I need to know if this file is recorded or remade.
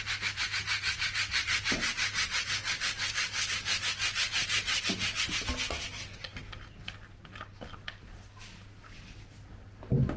recorded